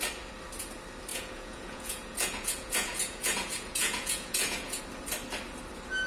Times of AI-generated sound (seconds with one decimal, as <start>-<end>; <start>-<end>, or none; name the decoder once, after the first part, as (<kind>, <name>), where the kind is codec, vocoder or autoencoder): 1.1-4.8 (vocoder, Vocos)